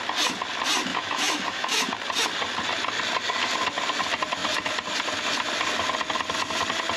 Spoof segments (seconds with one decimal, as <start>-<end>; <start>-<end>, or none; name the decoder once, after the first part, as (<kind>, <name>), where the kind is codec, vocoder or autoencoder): 0.9-1.9 (autoencoder, DAC-VAE)